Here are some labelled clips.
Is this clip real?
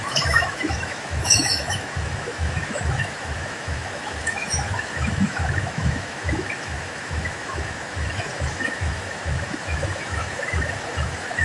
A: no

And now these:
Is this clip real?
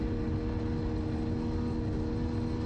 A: yes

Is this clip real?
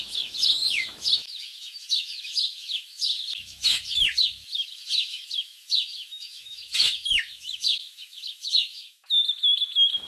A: no